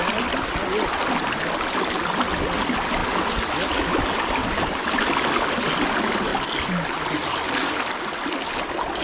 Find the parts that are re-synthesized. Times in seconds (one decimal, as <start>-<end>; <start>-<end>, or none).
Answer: 4.4-5.0

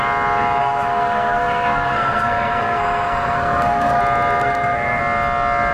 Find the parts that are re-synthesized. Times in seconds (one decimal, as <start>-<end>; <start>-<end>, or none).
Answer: 0.6-4.0; 4.4-5.0

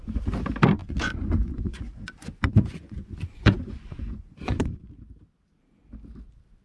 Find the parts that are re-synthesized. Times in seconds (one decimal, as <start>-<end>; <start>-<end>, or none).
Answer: 0.8-4.8

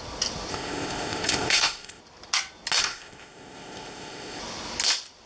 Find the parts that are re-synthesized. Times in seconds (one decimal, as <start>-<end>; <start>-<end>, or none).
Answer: 0.5-2.0; 2.8-4.4

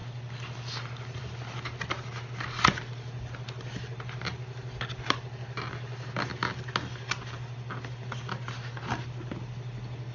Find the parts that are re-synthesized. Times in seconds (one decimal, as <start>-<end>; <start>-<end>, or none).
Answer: none

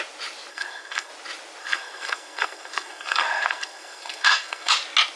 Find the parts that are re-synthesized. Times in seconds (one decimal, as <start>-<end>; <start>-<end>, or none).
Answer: 0.5-1.1; 1.6-4.7

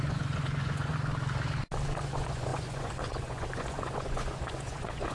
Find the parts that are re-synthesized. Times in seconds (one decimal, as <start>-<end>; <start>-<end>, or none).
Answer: 0.0-0.9; 2.0-5.1

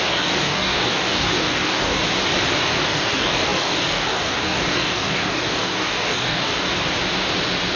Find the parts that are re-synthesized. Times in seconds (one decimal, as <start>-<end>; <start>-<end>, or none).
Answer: 0.0-2.0; 2.6-6.5